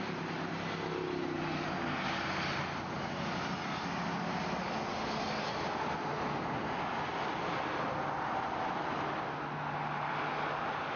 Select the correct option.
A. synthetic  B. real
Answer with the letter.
B